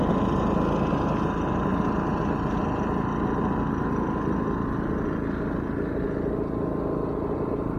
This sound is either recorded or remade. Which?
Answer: recorded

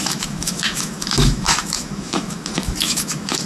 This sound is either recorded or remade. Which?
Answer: remade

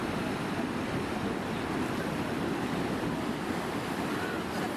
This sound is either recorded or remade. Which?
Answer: recorded